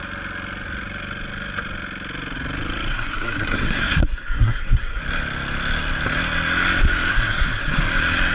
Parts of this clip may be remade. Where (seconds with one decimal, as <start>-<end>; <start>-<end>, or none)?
2.9-5.0; 7.1-7.8